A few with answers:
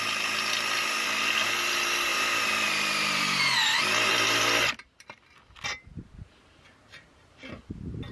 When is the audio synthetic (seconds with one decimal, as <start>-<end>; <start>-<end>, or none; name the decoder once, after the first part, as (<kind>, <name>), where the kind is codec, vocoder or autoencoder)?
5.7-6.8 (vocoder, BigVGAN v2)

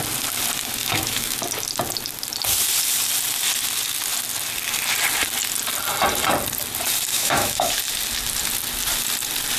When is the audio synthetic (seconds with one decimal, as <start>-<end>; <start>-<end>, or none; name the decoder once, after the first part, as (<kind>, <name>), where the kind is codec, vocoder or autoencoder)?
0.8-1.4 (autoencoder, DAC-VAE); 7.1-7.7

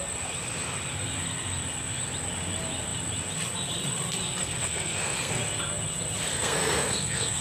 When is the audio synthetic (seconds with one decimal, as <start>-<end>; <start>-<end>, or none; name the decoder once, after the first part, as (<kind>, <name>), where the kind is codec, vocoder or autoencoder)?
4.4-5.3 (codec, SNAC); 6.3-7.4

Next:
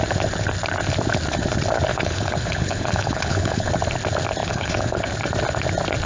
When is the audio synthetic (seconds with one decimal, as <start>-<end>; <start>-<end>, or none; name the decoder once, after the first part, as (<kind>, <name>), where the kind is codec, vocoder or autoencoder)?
1.9-3.7 (codec, HILCodec); 4.4-5.0